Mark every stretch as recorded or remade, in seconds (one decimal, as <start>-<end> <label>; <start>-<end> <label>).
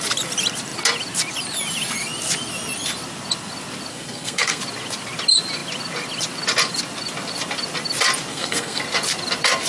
0.0-3.9 recorded; 3.9-4.6 remade; 4.6-8.3 recorded; 8.3-8.8 remade; 8.8-9.7 recorded